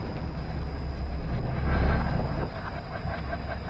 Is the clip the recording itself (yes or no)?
yes